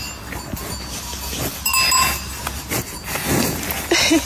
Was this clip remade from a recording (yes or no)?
no